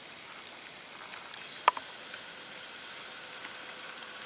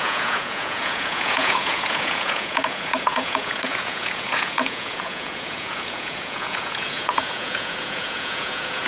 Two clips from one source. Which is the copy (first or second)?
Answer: second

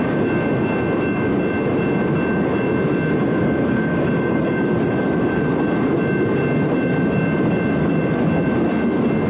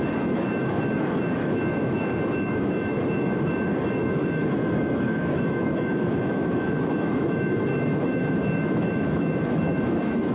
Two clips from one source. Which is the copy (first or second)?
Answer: second